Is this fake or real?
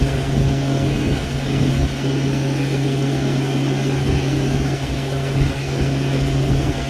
fake